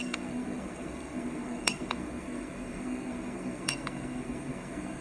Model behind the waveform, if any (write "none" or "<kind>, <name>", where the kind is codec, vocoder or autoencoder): codec, SNAC